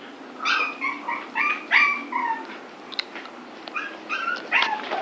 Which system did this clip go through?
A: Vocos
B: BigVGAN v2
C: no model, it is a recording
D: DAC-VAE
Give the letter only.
C